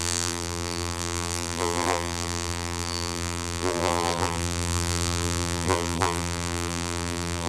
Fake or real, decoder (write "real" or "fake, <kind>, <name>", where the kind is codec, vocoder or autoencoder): fake, vocoder, BigVGAN v2